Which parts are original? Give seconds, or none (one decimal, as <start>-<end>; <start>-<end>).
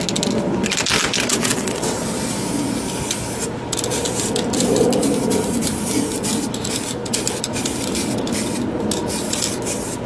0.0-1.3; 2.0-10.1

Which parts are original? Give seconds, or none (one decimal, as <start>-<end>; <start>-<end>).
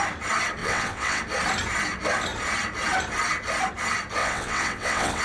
0.0-0.6; 1.2-4.2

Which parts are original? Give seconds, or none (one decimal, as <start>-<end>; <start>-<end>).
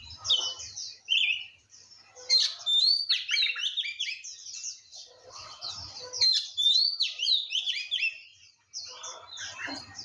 0.0-4.9; 5.7-10.0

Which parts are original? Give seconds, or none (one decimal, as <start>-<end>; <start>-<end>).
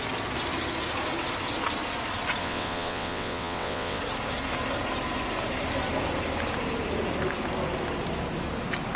0.0-2.4; 4.0-9.0